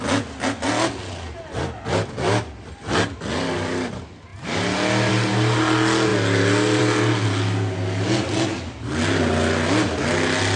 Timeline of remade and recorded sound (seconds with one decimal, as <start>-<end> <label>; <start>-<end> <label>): 0.0-10.6 recorded